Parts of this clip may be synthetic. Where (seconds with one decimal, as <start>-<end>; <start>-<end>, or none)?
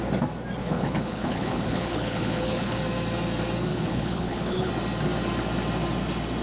0.6-2.8; 3.7-4.7